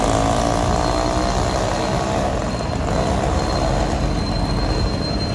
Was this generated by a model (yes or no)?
no